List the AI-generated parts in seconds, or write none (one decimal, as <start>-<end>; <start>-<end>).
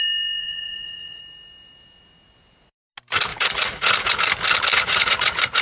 0.4-1.2; 3.3-4.3; 4.7-5.6